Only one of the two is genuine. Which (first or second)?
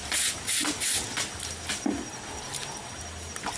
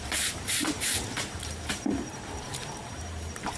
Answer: first